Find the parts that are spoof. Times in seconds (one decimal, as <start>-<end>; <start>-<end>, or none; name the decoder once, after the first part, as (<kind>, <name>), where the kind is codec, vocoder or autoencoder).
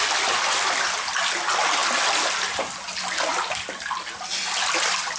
none